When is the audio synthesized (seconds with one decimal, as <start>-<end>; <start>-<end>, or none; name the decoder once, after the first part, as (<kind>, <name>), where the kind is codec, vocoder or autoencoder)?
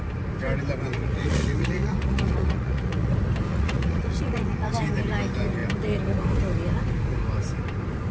0.9-3.1 (vocoder, Vocos); 3.5-4.7